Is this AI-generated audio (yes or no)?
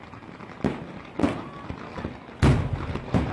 no